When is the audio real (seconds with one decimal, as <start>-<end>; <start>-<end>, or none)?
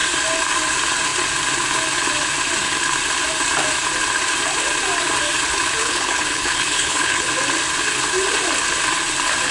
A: 0.0-5.8; 7.3-9.5